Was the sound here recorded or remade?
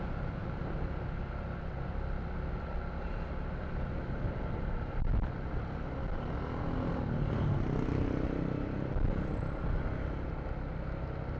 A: recorded